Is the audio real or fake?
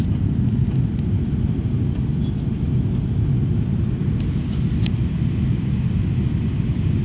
real